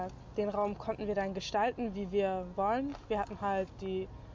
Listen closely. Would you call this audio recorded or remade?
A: recorded